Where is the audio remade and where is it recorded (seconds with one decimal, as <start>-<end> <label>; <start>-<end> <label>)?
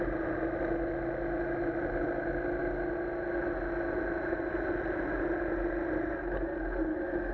0.0-7.3 recorded